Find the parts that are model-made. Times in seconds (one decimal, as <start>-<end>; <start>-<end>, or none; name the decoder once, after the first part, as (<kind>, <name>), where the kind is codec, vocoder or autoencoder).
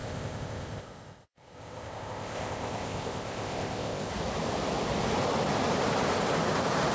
0.0-4.1 (codec, ZipCodec)